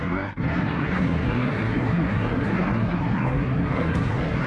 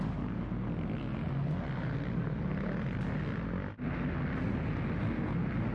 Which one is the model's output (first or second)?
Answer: first